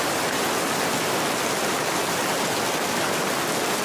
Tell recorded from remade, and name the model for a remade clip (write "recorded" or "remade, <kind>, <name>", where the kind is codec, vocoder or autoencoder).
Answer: recorded